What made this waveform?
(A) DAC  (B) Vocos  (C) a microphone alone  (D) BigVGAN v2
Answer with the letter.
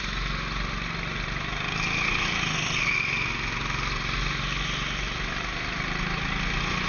C